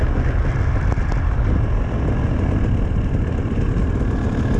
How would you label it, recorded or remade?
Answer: recorded